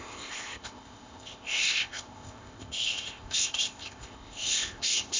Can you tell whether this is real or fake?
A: fake